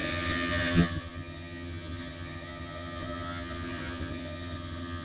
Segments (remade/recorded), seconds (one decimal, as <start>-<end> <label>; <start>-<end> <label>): 0.0-5.0 remade